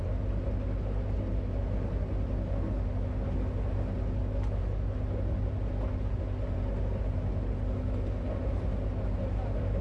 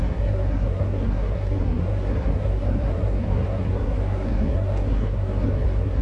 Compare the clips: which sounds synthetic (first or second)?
second